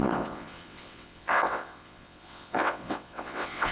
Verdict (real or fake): fake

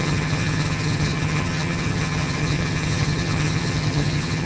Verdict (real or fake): fake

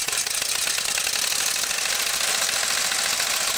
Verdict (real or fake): real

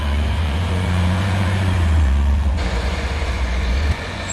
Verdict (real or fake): fake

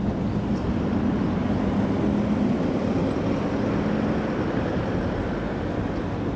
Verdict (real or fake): real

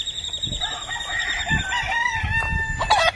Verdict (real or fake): real